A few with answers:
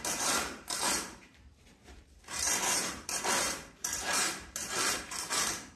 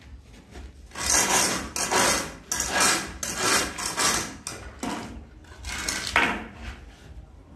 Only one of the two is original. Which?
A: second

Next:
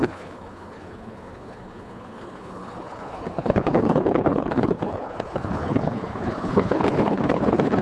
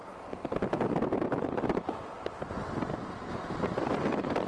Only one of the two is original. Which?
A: second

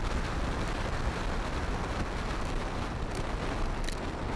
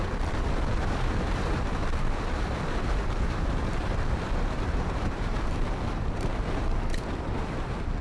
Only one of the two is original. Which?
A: first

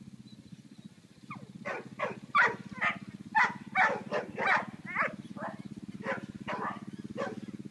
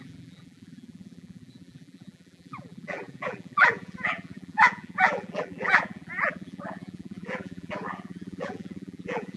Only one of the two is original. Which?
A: first